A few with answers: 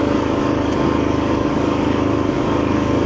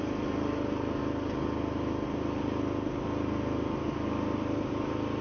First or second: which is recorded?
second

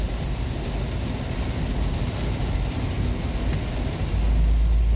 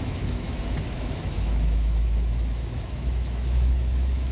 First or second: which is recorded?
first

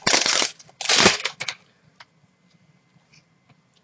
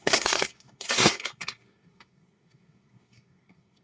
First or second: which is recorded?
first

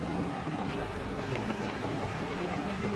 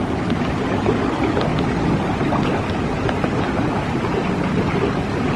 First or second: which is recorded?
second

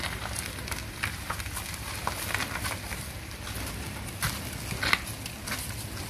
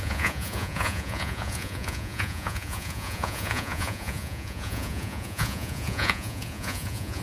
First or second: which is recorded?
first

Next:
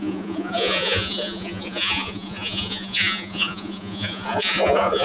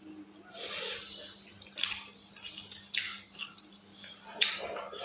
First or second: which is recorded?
second